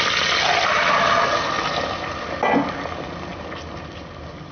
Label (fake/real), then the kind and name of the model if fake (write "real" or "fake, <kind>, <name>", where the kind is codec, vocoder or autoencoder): real